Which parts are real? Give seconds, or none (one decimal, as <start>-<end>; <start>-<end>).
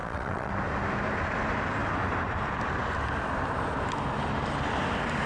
0.5-5.3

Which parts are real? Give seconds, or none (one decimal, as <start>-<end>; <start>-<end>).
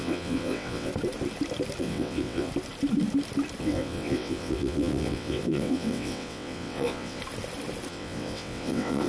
0.9-1.8; 2.5-3.6; 7.2-7.9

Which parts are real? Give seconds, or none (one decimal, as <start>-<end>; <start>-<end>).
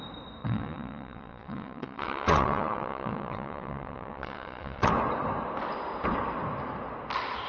0.0-0.4; 4.9-7.5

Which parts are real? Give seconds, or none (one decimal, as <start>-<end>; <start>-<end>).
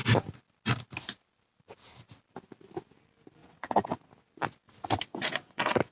0.0-3.4; 4.1-5.1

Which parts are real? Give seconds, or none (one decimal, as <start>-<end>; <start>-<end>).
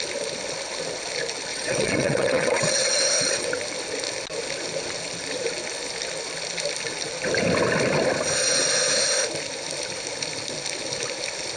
0.0-1.5; 3.5-11.6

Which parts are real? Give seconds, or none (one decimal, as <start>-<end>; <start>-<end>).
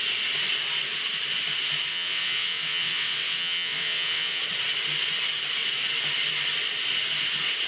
0.0-1.9; 4.4-7.7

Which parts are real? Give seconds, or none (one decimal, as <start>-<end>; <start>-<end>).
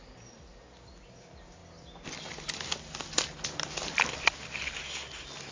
0.0-5.5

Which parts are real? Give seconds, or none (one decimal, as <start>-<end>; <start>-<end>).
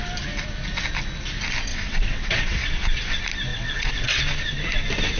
0.0-1.7; 2.7-3.5; 4.2-5.2